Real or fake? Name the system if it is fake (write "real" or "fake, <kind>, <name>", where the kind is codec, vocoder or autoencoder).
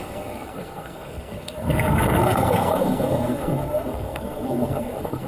fake, codec, SNAC